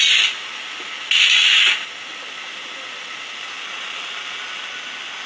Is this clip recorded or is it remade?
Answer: recorded